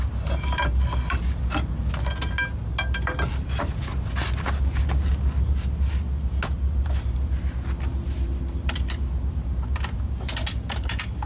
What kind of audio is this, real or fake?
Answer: real